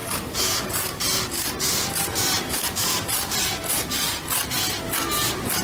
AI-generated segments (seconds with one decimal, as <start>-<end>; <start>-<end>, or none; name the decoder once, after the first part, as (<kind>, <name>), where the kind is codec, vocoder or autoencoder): 0.0-3.4 (vocoder, BigVGAN v2)